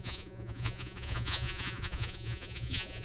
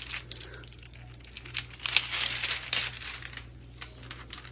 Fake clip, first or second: first